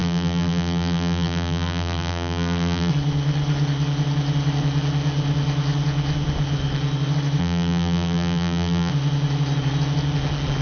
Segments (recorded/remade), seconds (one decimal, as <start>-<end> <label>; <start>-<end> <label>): 0.0-2.9 remade; 2.9-7.4 recorded; 7.4-8.9 remade; 8.9-10.6 recorded